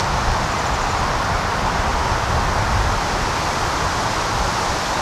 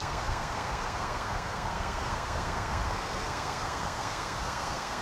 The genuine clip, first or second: first